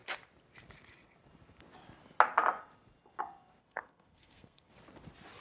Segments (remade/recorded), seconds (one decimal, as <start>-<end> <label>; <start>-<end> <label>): 0.0-3.6 recorded; 3.6-4.7 remade; 4.7-5.4 recorded